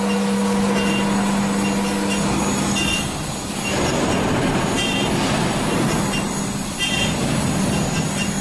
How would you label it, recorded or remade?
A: recorded